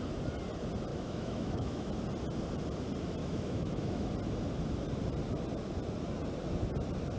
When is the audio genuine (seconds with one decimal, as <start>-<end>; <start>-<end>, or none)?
0.0-0.9; 1.9-3.2; 4.1-7.2